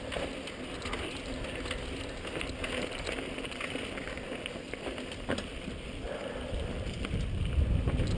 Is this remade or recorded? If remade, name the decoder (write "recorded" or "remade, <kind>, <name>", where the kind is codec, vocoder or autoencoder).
recorded